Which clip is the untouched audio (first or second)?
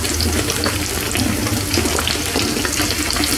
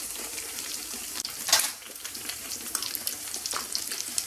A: first